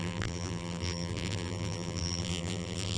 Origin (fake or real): fake